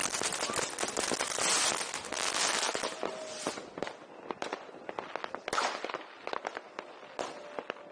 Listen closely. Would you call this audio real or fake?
real